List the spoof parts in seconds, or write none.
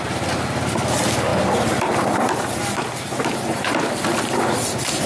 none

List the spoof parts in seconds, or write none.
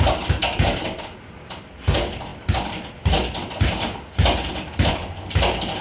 none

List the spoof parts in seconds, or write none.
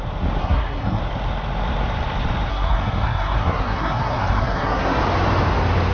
0.4-1.0 (codec, SNAC); 2.5-5.0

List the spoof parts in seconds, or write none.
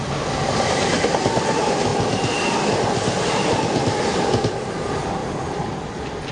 none